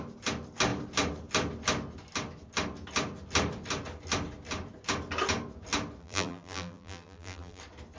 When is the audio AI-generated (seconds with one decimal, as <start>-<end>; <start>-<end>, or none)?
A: 6.0-7.6